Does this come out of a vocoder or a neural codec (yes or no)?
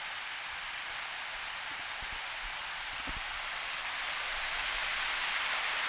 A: no